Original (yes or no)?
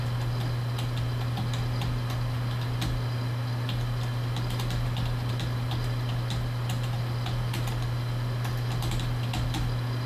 yes